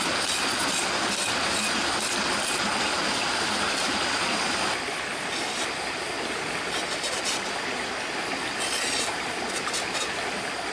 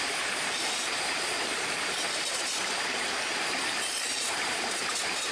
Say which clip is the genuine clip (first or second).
first